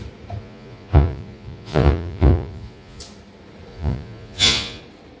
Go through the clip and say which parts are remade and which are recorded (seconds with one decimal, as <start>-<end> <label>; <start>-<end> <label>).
0.0-0.4 recorded; 0.4-3.0 remade; 3.0-3.7 recorded; 3.7-4.8 remade; 4.8-5.2 recorded

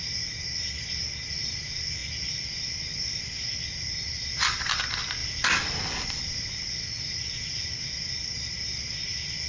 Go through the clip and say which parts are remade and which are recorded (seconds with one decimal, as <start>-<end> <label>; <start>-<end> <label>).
0.0-2.0 recorded; 2.0-3.0 remade; 3.0-5.2 recorded; 5.2-6.7 remade; 6.7-9.5 recorded

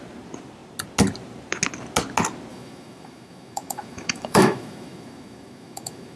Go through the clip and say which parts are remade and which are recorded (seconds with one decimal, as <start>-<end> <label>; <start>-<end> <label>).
0.0-2.5 recorded; 2.5-6.2 remade

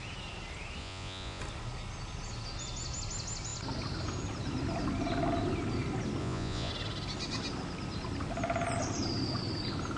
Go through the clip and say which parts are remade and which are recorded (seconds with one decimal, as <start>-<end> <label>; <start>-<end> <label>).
0.0-0.8 recorded; 0.8-1.4 remade; 1.4-6.2 recorded; 6.2-6.7 remade; 6.7-10.0 recorded

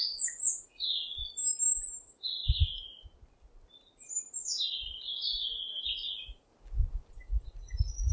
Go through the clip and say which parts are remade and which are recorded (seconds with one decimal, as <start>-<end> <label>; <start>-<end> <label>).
0.0-1.2 remade; 1.2-6.1 recorded; 6.1-6.5 remade; 6.5-7.1 recorded; 7.1-8.1 remade

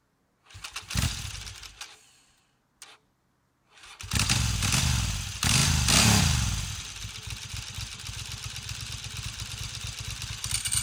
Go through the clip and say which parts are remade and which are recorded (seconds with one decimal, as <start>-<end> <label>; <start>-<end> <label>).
0.0-10.8 recorded

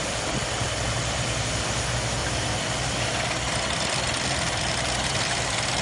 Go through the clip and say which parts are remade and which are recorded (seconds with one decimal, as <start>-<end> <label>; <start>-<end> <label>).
0.0-2.2 recorded; 2.2-5.8 remade